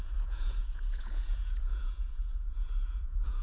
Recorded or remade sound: remade